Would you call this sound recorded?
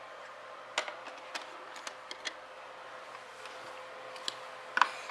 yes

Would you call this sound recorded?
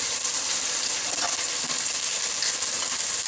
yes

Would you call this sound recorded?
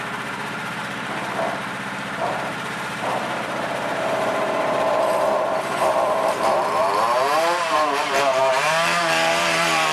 no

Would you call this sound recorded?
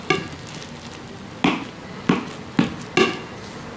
yes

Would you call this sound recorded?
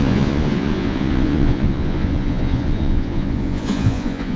no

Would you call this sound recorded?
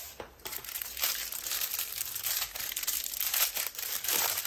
no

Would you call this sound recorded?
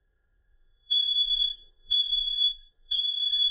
no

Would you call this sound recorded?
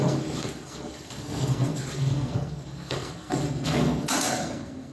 no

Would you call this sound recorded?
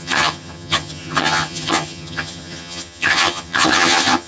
no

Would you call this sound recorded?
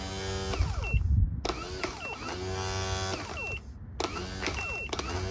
yes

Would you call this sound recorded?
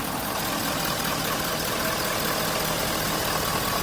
yes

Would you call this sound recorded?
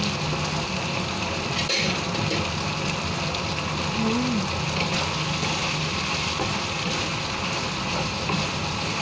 yes